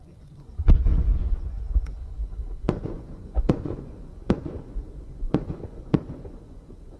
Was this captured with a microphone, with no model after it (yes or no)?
no